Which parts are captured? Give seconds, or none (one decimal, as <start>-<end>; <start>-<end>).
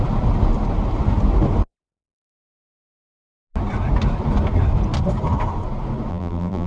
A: 0.0-6.1